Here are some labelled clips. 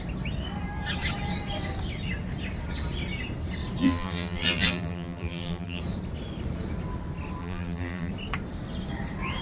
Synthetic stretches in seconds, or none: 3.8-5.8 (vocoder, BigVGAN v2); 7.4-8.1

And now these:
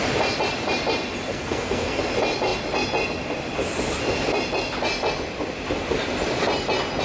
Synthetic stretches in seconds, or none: 1.3-2.0 (codec, SNAC)

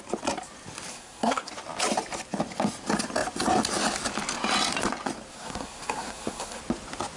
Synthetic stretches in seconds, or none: 0.9-1.5 (codec, SNAC); 5.3-6.6

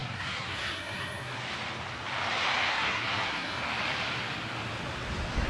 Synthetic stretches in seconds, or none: 0.0-1.4 (codec, SNAC); 2.7-3.6

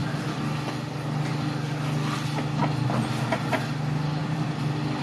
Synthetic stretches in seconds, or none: none

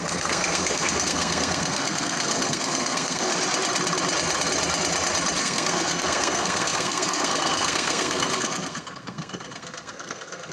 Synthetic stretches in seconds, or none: 0.0-3.3 (codec, SNAC); 5.4-10.5

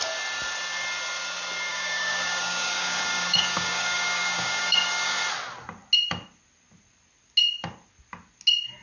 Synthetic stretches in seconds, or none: 1.7-5.2 (codec, DAC)